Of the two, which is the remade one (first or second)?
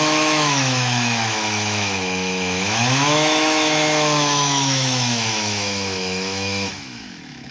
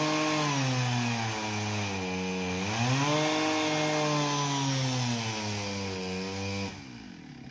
first